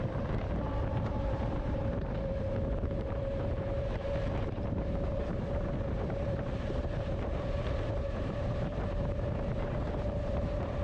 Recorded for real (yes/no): no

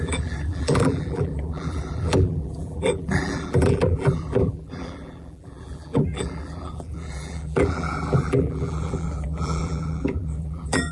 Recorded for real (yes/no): no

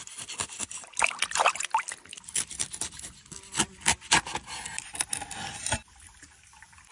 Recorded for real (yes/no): yes